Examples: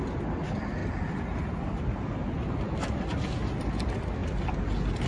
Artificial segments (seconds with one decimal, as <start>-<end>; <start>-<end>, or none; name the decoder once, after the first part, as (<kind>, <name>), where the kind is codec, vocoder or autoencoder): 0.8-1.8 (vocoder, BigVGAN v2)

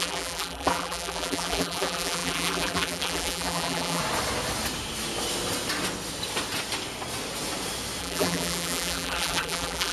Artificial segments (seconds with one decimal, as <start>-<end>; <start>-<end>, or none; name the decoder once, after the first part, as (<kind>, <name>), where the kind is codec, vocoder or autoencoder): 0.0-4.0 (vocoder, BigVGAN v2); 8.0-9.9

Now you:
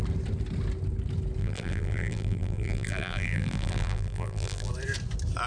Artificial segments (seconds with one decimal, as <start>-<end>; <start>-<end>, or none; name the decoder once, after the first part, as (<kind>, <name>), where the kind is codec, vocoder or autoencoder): 1.4-4.7 (vocoder, BigVGAN v2)